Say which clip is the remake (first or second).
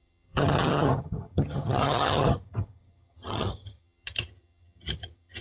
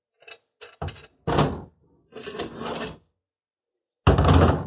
first